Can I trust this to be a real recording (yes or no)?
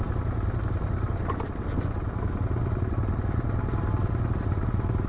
yes